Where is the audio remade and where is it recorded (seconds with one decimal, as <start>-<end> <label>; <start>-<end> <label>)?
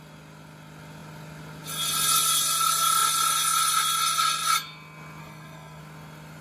0.0-5.2 recorded; 5.2-5.8 remade; 5.8-6.4 recorded